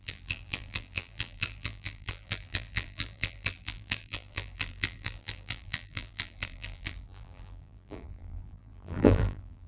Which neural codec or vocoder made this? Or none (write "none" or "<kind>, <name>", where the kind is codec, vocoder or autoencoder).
vocoder, BigVGAN v2